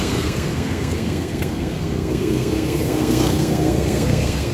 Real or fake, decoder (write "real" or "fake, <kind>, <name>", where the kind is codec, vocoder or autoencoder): fake, codec, SNAC